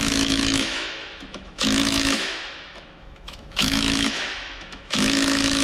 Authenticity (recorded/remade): remade